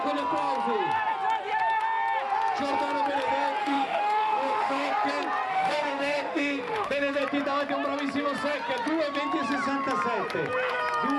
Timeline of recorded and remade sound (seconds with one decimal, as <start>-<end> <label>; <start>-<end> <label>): 0.0-3.6 recorded; 3.6-4.9 remade; 4.9-5.5 recorded; 5.5-7.2 remade; 7.2-11.2 recorded